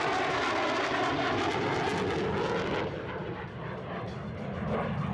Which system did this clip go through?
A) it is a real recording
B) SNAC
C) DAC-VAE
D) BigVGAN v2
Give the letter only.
A